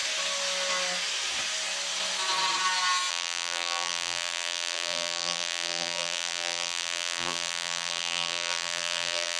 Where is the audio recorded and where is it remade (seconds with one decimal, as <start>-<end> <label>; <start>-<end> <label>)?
0.0-3.1 recorded; 3.1-9.4 remade